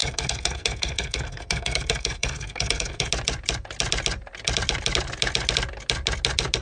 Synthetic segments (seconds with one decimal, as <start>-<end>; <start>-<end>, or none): 0.0-3.1